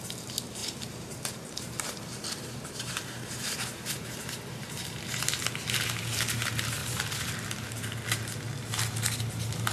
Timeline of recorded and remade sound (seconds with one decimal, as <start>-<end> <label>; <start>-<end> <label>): 0.0-0.6 recorded; 0.6-5.2 remade; 5.2-6.8 recorded; 6.8-7.3 remade; 7.3-9.7 recorded